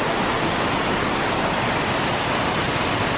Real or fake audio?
real